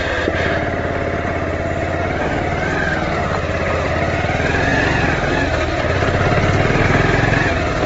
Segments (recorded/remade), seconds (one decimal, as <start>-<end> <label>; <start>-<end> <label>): 0.0-3.2 recorded; 3.2-3.9 remade; 3.9-7.9 recorded